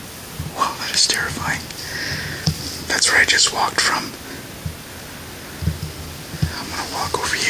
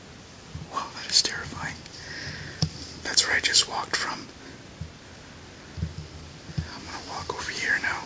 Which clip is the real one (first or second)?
first